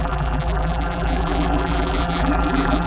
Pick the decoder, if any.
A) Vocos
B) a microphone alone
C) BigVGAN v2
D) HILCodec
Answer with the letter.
C